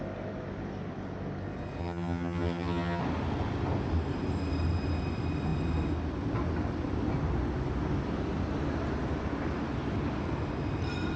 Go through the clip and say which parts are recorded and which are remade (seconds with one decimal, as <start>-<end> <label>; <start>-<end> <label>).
0.0-1.8 recorded; 1.8-3.0 remade; 3.0-11.2 recorded